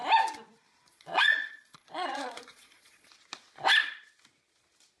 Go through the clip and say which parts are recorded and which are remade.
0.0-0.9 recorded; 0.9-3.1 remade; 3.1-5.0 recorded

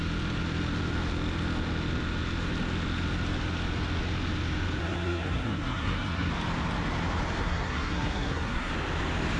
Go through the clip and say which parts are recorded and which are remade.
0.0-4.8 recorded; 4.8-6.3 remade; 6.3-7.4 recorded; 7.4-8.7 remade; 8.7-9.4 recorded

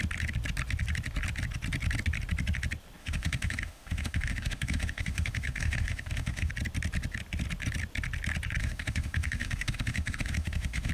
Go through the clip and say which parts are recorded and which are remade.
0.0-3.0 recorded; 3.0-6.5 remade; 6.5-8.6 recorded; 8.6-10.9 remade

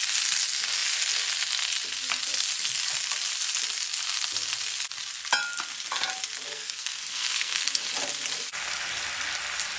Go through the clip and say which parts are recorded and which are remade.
0.0-6.5 recorded; 6.5-7.8 remade; 7.8-9.8 recorded